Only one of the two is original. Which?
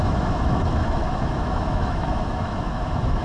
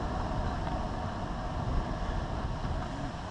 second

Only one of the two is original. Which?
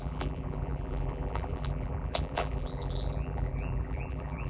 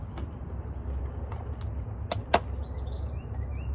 second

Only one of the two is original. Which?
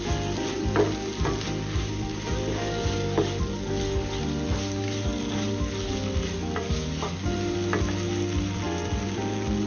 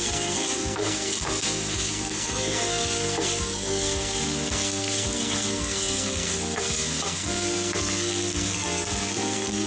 first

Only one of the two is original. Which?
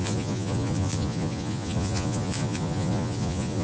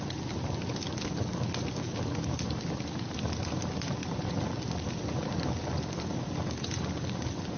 second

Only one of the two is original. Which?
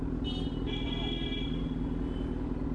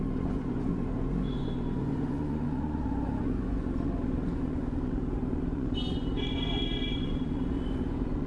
first